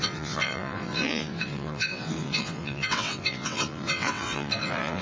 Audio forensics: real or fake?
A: fake